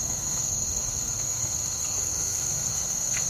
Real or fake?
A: fake